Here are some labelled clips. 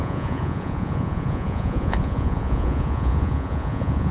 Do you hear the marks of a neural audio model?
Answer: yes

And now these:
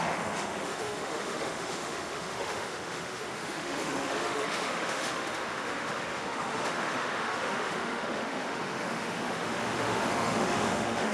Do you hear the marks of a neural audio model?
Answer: yes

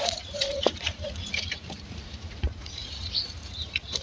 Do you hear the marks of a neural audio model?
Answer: yes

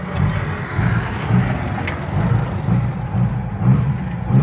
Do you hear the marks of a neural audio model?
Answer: no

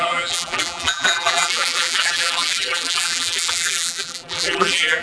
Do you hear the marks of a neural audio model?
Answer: yes